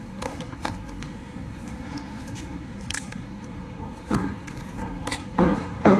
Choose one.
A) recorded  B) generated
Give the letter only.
B